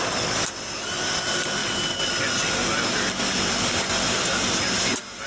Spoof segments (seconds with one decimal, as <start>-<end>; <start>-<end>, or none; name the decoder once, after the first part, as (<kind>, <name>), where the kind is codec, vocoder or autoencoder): none